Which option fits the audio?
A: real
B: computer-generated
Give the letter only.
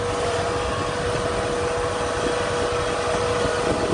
A